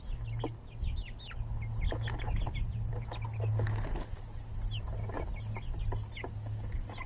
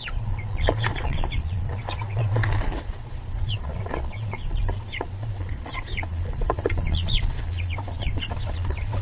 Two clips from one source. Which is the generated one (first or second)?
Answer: second